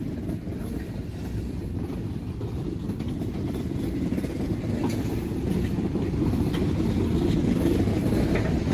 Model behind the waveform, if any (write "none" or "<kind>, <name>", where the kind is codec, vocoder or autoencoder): none